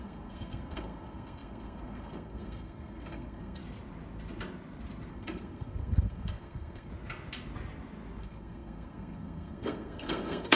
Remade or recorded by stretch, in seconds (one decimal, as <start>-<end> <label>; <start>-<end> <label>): 0.0-3.6 remade; 3.6-5.1 recorded; 5.1-6.9 remade; 6.9-8.2 recorded; 8.2-10.6 remade